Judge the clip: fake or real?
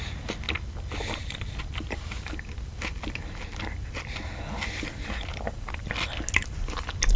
real